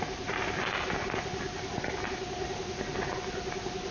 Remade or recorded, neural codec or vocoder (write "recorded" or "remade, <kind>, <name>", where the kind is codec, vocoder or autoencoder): recorded